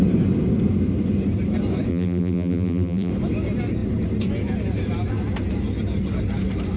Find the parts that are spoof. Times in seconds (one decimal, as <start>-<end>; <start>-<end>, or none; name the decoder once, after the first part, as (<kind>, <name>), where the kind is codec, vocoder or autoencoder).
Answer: 1.9-3.1 (vocoder, BigVGAN v2)